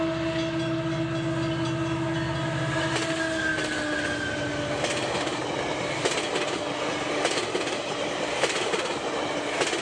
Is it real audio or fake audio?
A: real